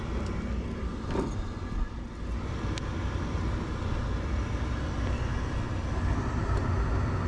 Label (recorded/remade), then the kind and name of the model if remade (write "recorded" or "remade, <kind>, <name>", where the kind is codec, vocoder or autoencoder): recorded